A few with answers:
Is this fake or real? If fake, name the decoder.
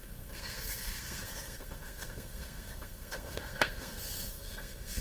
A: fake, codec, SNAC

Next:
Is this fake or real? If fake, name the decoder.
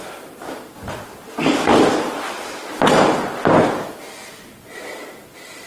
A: real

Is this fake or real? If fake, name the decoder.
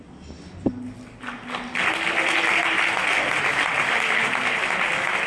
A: real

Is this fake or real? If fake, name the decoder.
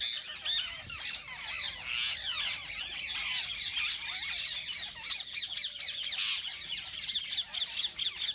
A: real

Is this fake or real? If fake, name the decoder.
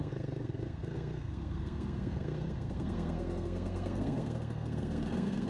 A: fake, codec, SNAC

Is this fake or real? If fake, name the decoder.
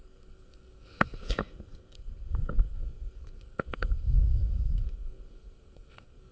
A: fake, codec, SNAC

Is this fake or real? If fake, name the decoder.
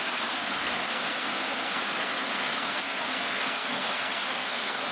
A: fake, codec, SNAC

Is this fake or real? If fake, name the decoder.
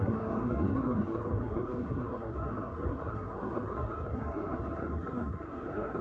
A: fake, codec, SNAC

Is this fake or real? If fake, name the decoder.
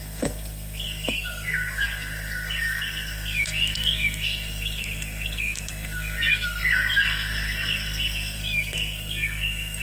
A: fake, codec, SNAC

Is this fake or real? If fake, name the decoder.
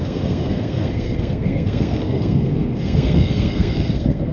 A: fake, codec, SNAC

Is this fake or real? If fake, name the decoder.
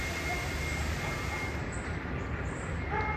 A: real